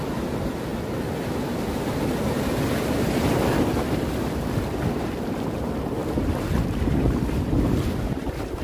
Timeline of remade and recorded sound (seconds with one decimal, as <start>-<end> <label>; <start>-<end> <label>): 0.0-6.0 remade; 6.0-7.0 recorded; 7.0-8.6 remade